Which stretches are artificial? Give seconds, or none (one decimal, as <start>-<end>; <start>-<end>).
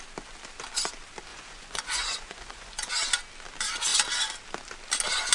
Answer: 1.3-2.9